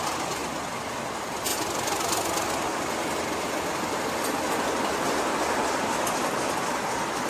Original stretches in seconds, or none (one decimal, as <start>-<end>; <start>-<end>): 0.0-7.3